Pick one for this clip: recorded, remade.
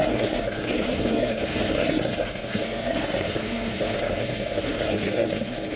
remade